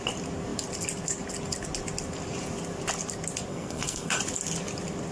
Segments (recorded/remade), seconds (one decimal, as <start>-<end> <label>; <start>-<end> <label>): 0.0-3.5 recorded; 3.5-4.2 remade; 4.2-5.1 recorded